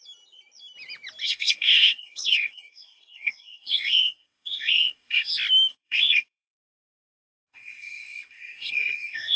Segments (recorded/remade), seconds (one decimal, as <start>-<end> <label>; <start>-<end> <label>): 0.0-1.2 recorded; 1.2-5.3 remade; 5.3-5.7 recorded; 5.7-9.4 remade